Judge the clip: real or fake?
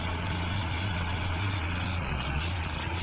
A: fake